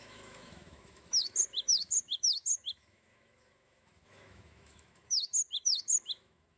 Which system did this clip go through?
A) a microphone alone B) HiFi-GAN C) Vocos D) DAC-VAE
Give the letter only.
D